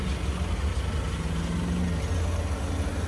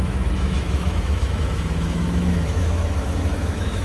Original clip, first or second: first